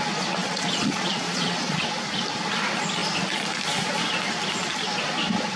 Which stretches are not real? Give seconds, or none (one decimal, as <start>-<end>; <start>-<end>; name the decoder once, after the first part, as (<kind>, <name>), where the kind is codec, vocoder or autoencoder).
0.4-1.8 (vocoder, Vocos)